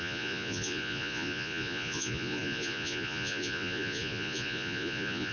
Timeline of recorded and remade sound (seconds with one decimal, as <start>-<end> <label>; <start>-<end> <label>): 0.0-5.3 remade